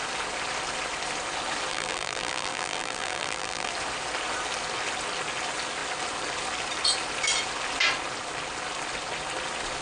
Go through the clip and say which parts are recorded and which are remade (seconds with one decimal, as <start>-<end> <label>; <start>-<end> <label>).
0.0-1.7 recorded; 1.7-3.7 remade; 3.7-9.8 recorded